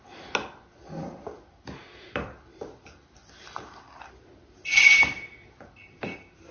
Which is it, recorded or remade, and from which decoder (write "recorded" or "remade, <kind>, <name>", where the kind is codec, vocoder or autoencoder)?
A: recorded